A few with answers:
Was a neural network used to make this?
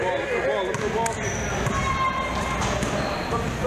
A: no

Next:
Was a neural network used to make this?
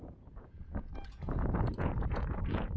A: yes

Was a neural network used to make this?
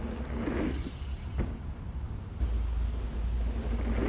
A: no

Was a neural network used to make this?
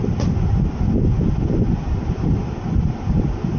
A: no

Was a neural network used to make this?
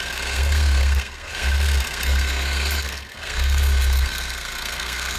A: yes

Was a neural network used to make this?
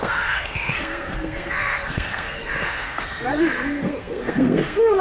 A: yes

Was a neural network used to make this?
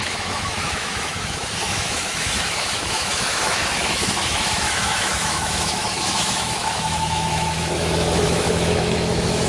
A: yes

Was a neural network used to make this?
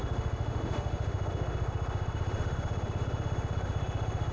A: yes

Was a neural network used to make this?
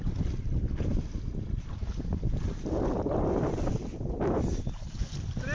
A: no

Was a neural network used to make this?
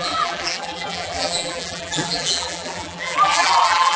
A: yes